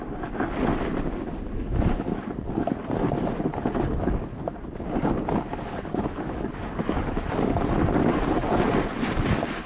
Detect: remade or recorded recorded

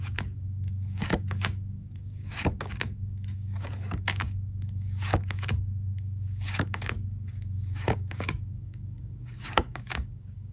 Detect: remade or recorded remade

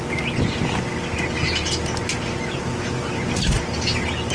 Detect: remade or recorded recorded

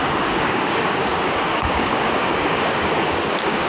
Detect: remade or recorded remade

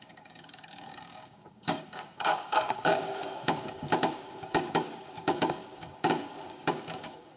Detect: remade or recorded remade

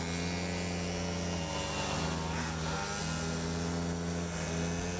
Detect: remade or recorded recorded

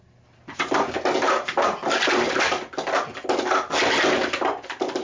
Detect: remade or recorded recorded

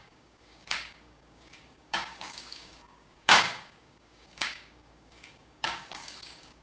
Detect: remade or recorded remade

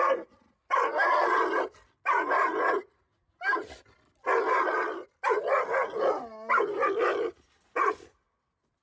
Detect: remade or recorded recorded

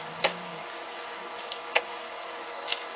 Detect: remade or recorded remade